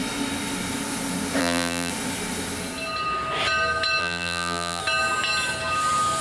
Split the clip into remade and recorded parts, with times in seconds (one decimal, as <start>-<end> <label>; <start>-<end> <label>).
0.0-1.4 recorded; 1.4-1.9 remade; 1.9-4.0 recorded; 4.0-4.8 remade; 4.8-6.2 recorded